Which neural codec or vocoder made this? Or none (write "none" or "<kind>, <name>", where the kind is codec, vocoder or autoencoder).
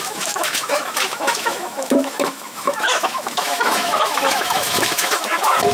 autoencoder, DAC-VAE